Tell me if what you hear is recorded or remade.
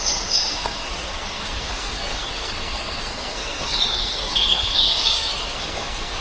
remade